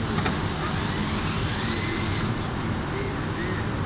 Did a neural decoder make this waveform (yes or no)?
no